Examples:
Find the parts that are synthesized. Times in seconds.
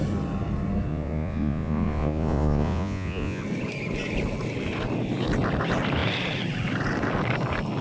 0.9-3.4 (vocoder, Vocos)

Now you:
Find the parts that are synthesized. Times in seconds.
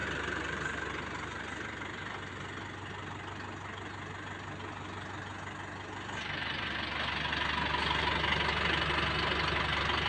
none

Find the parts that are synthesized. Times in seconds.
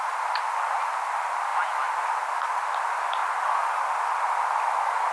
none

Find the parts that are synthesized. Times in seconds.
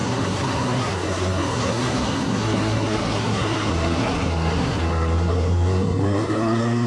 0.0-6.9 (codec, SNAC)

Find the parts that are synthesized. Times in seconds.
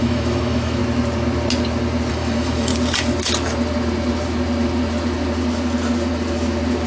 0.0-0.8 (autoencoder, DAC-VAE); 2.1-2.7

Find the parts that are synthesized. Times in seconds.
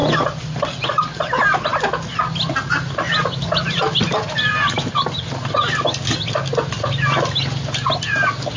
none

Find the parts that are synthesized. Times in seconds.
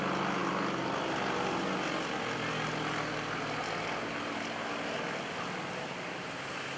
none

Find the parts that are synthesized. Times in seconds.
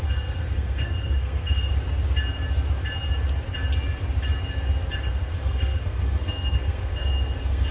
0.0-1.7 (codec, SNAC); 5.1-7.7